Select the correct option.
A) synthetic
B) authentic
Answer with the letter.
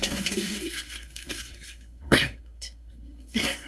A